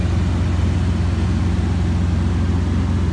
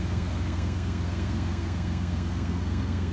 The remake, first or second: second